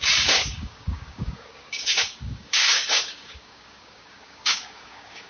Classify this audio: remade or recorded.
remade